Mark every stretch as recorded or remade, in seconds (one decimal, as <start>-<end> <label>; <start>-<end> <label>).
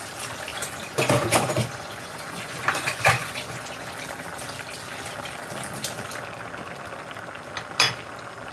0.0-0.5 recorded; 0.5-3.9 remade; 3.9-8.5 recorded